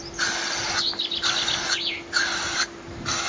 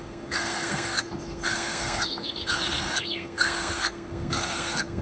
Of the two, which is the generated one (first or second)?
second